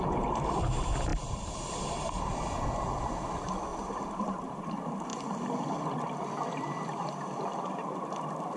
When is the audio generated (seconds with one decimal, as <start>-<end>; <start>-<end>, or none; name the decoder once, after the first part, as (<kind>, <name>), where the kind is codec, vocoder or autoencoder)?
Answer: 1.1-1.7 (vocoder, BigVGAN v2); 3.7-4.6